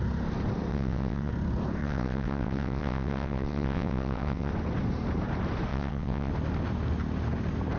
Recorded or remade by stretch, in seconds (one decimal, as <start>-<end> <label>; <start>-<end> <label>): 0.0-0.7 recorded; 0.7-1.3 remade; 1.3-1.8 recorded; 1.8-4.5 remade; 4.5-5.7 recorded; 5.7-6.3 remade; 6.3-7.8 recorded